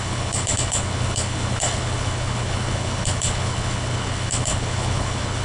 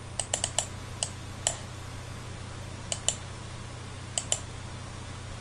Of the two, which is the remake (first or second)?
first